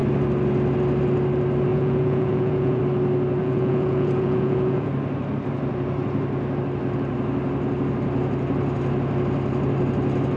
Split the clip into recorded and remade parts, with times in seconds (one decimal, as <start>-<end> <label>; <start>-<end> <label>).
0.0-1.7 recorded; 1.7-2.8 remade; 2.8-3.4 recorded; 3.4-4.9 remade; 4.9-10.4 recorded